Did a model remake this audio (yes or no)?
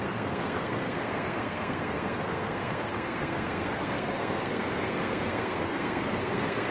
yes